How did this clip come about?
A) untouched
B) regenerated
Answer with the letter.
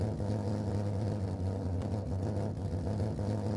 A